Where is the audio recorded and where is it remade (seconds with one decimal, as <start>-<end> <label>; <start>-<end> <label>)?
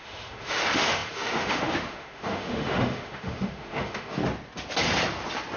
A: 0.0-4.2 remade; 4.2-5.6 recorded